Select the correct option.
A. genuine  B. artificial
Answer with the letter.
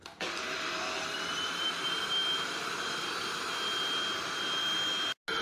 A